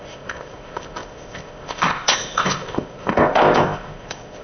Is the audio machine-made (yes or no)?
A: yes